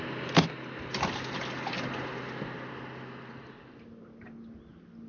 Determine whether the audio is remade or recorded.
recorded